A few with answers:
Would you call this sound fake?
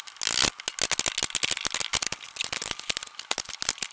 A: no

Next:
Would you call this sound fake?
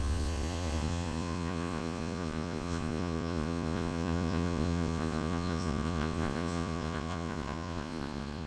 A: yes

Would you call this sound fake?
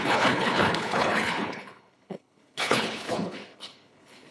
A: yes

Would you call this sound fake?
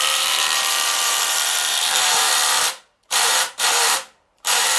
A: yes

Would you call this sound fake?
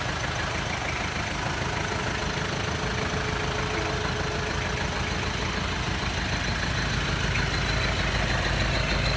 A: no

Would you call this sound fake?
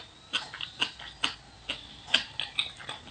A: no